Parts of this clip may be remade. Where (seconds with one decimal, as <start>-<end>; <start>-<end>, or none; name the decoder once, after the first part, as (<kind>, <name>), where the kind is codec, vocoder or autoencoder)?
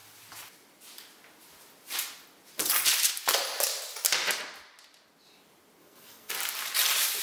5.8-6.3 (codec, SNAC)